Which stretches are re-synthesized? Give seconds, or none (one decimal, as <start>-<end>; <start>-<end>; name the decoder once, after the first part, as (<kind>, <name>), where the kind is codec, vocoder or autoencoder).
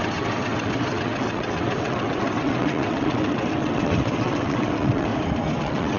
0.0-5.1 (vocoder, WaveNeXt); 5.6-6.0